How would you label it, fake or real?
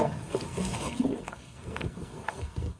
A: fake